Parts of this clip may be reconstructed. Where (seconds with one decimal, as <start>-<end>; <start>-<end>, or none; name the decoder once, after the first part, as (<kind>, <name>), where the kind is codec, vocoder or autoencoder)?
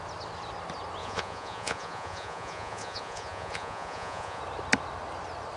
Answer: 1.0-4.4 (vocoder, Vocos)